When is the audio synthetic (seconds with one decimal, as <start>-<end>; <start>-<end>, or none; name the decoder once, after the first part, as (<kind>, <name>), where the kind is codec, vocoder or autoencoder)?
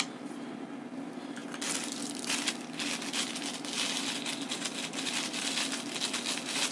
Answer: none